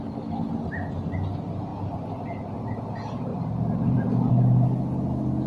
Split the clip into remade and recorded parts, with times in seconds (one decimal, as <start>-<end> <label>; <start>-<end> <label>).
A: 0.0-1.7 recorded; 1.7-2.8 remade; 2.8-3.3 recorded; 3.3-4.3 remade; 4.3-5.5 recorded